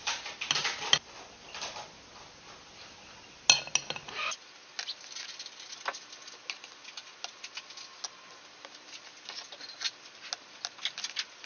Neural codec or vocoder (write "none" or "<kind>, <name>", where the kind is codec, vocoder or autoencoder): none